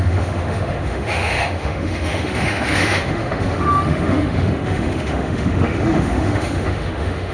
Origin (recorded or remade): remade